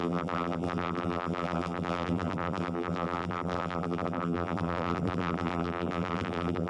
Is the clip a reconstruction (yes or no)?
yes